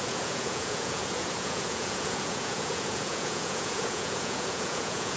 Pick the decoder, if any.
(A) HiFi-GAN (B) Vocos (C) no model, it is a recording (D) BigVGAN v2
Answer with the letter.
B